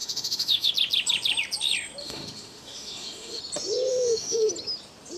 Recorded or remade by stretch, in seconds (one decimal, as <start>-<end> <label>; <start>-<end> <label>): 0.0-0.7 remade; 0.7-2.0 recorded; 2.0-3.4 remade; 3.4-3.9 recorded; 3.9-4.5 remade; 4.5-5.2 recorded